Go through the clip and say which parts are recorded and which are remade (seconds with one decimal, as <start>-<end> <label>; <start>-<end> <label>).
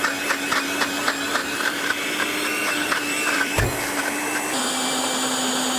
0.0-1.4 recorded; 1.4-4.9 remade; 4.9-5.8 recorded